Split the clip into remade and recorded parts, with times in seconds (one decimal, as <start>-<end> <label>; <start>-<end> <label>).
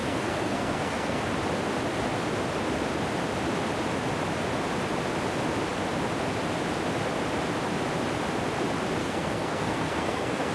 0.0-1.2 remade; 1.2-9.0 recorded; 9.0-10.5 remade